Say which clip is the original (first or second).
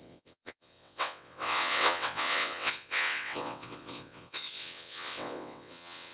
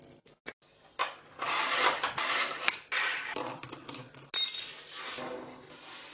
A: second